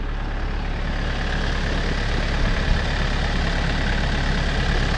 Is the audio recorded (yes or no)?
yes